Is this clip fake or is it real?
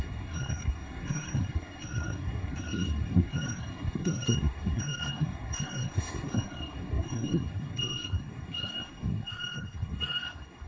fake